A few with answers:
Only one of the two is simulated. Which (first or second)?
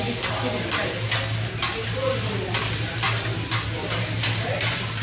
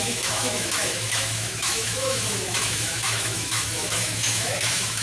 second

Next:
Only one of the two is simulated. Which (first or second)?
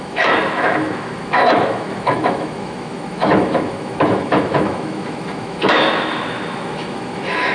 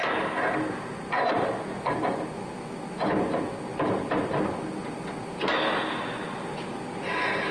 first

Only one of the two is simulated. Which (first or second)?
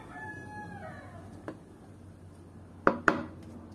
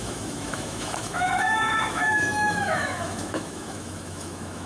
second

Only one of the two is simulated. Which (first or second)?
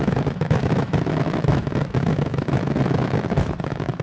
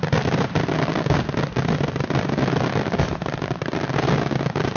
first